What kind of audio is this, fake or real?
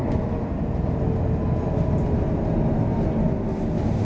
real